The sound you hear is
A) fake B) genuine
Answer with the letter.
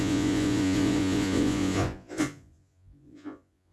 A